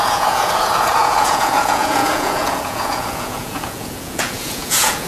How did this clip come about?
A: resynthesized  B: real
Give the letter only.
A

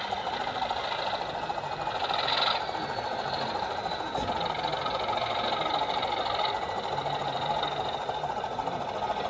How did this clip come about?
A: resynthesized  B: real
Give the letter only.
B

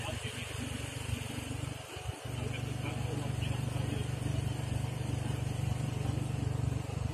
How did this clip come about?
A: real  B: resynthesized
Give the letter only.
A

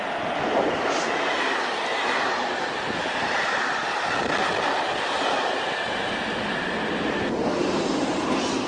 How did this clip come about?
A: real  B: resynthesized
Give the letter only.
A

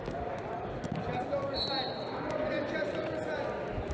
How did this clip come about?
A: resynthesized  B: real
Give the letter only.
B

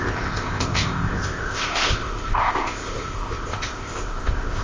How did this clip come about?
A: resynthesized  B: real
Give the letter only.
A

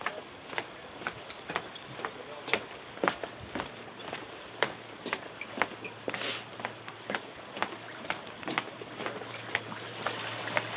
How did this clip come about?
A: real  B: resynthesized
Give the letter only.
A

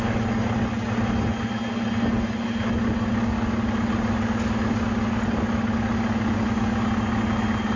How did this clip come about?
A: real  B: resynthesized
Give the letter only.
A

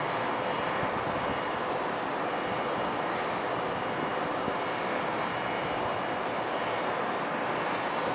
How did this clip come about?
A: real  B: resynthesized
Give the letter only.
A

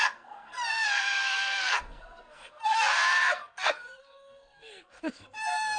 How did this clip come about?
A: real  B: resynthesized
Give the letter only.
B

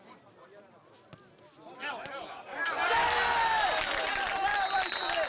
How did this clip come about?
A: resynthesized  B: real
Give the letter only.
B